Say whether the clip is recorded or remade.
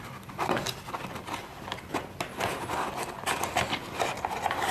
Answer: recorded